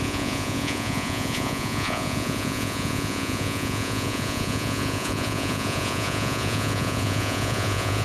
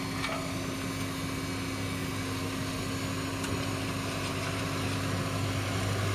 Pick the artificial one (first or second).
first